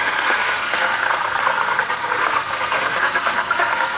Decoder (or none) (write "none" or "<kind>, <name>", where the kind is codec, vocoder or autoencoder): codec, SNAC